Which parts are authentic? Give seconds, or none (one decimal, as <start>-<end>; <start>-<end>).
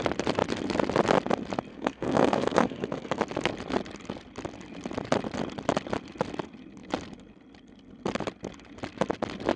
0.0-1.7; 3.2-9.6